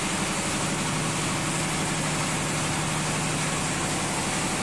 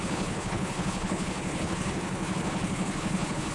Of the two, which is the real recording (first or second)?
first